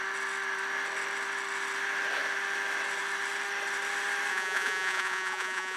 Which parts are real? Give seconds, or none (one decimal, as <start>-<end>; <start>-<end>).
0.0-4.3

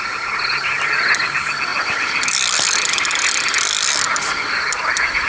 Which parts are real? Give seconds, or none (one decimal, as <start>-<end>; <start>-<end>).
0.0-5.3